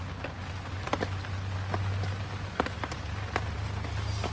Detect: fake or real real